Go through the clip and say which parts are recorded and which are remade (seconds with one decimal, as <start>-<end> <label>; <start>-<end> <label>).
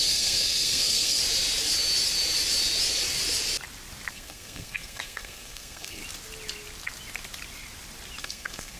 0.0-1.2 remade; 1.2-4.1 recorded; 4.1-6.0 remade; 6.0-8.2 recorded; 8.2-8.8 remade